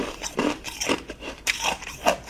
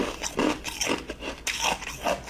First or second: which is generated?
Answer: first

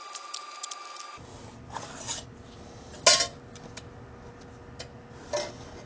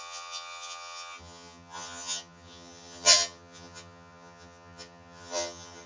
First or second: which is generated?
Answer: second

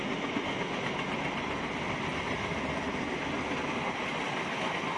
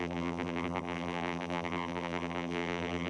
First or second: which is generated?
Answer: second